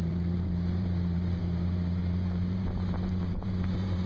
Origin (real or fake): fake